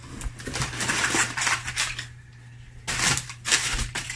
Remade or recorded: recorded